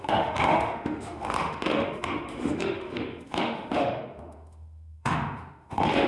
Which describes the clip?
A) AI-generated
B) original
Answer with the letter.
A